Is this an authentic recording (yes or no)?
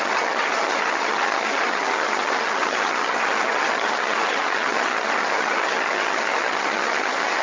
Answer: no